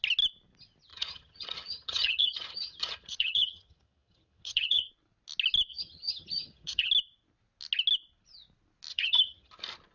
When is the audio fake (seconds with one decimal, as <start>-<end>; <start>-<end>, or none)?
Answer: 0.9-4.9; 5.7-6.9; 8.9-9.5